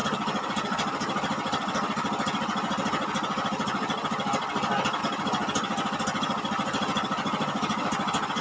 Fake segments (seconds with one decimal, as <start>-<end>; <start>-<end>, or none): none